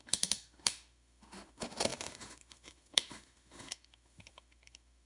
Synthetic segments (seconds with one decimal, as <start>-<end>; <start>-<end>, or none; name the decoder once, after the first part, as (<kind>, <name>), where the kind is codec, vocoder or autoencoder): 0.0-5.1 (autoencoder, DAC-VAE)